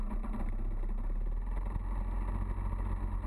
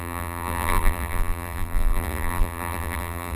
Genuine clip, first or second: first